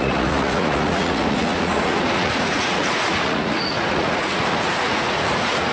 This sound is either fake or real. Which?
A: fake